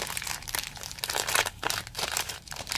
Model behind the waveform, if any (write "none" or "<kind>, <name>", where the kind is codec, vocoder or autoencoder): vocoder, BigVGAN v2